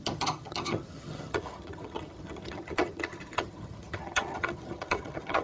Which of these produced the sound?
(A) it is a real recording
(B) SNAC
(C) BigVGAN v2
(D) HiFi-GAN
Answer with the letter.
D